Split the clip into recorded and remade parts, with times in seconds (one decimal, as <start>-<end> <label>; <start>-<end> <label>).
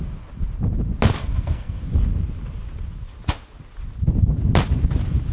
0.0-1.2 recorded; 1.2-1.8 remade; 1.8-5.3 recorded